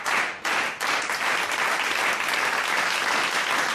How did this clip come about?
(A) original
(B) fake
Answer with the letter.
A